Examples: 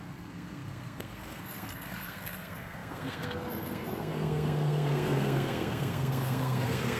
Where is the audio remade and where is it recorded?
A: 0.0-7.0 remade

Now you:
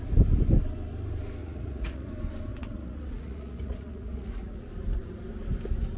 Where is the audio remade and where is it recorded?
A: 0.0-1.4 recorded; 1.4-2.1 remade; 2.1-2.5 recorded; 2.5-4.7 remade; 4.7-6.0 recorded

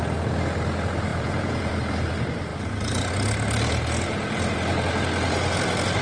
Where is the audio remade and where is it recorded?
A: 0.0-1.1 recorded; 1.1-1.7 remade; 1.7-6.0 recorded

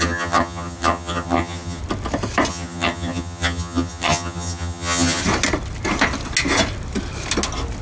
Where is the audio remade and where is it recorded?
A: 0.0-1.8 remade; 1.8-2.5 recorded; 2.5-5.2 remade; 5.2-7.8 recorded

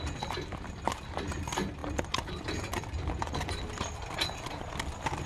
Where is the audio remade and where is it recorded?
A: 0.0-5.3 recorded

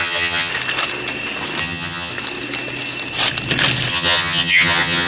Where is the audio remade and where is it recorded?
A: 0.0-0.5 remade; 0.5-1.6 recorded; 1.6-2.1 remade; 2.1-3.9 recorded; 3.9-5.1 remade

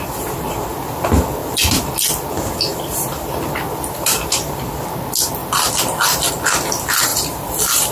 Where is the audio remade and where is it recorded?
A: 0.0-1.4 recorded; 1.4-2.3 remade; 2.3-2.7 recorded; 2.7-4.6 remade; 4.6-5.4 recorded; 5.4-6.3 remade; 6.3-7.1 recorded; 7.1-7.9 remade